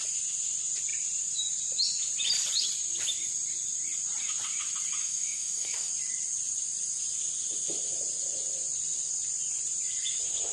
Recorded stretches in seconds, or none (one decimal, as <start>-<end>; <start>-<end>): 0.0-5.0; 5.9-10.5